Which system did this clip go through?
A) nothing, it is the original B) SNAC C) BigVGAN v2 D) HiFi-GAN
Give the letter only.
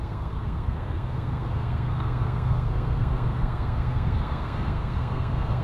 B